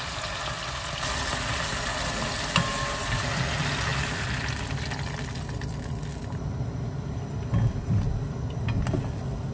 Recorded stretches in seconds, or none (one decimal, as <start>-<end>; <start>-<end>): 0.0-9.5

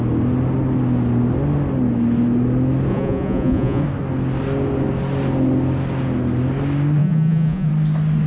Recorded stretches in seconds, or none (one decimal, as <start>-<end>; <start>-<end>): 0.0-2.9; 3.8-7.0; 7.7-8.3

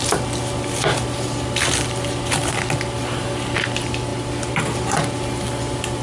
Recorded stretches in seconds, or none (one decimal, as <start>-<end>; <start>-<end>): 0.0-6.0

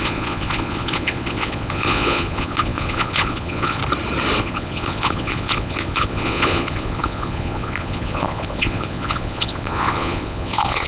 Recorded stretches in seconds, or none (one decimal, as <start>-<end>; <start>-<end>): 3.8-4.4

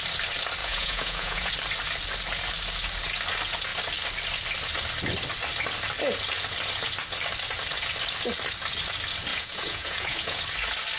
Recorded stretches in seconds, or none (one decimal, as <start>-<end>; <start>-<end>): 0.0-0.6; 1.5-9.3; 10.4-11.0

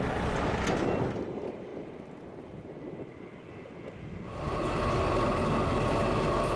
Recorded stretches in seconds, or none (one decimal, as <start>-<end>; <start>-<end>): 0.0-6.6